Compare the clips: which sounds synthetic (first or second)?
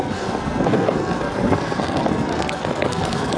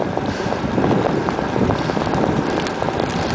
first